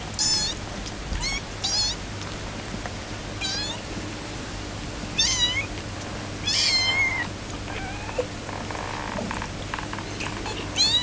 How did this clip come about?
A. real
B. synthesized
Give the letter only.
A